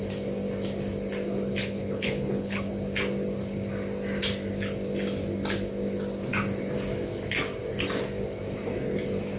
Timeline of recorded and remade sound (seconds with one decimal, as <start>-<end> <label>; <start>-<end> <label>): 0.0-1.6 recorded; 1.6-2.7 remade; 2.7-9.4 recorded